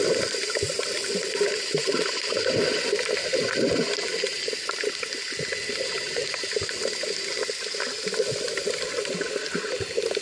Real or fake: real